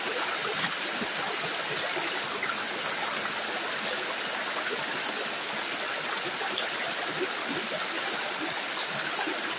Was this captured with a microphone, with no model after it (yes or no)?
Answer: yes